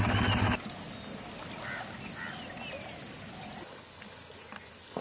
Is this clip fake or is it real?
real